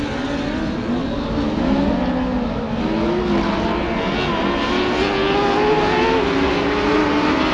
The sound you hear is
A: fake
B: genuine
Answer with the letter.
B